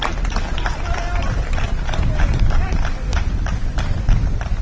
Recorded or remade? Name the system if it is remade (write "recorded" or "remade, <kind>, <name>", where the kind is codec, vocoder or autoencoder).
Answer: recorded